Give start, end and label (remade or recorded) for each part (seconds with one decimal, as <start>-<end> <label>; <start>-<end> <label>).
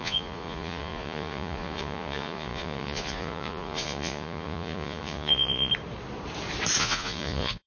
0.0-5.7 remade; 5.7-6.8 recorded; 6.8-7.7 remade